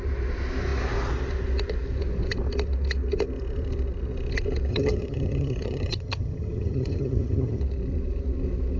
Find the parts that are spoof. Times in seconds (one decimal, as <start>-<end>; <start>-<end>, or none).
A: 4.7-7.6